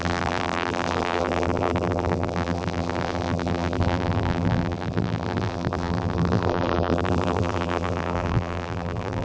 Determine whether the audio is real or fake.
fake